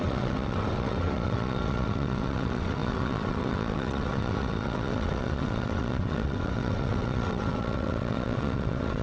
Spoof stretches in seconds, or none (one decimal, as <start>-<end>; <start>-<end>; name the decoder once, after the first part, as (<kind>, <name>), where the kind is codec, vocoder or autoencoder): 0.0-9.0 (vocoder, WaveNeXt)